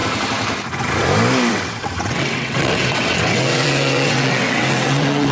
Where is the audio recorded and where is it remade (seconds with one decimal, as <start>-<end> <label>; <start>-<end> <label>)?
0.0-1.5 recorded; 1.5-5.3 remade

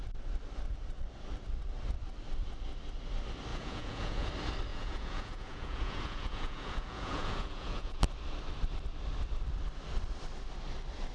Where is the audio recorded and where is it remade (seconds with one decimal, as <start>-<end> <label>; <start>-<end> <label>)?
0.0-3.5 recorded; 3.5-4.3 remade; 4.3-4.7 recorded; 4.7-8.0 remade; 8.0-11.1 recorded

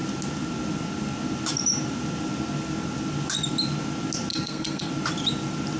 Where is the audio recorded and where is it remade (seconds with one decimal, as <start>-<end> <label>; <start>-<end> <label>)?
0.0-4.3 recorded; 4.3-4.9 remade; 4.9-5.8 recorded

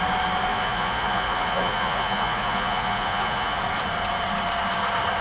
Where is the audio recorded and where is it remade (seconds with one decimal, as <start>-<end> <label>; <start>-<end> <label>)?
0.0-0.5 recorded; 0.5-3.6 remade; 3.6-5.2 recorded

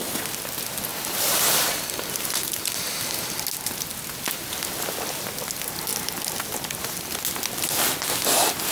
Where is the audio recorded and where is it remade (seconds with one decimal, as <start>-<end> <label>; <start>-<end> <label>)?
0.0-0.9 recorded; 0.9-3.2 remade; 3.2-8.7 recorded